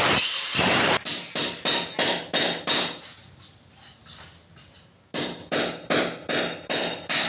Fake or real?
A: real